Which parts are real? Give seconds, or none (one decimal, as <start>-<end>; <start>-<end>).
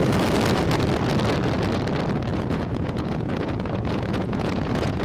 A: 0.0-2.3